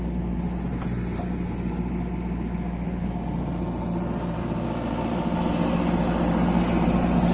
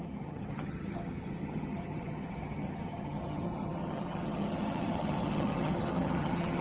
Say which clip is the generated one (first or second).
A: second